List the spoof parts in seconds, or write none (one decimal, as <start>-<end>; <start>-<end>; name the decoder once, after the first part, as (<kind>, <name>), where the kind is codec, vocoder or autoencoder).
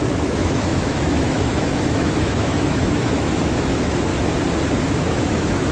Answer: 0.0-4.1 (autoencoder, DAC-VAE); 5.0-5.7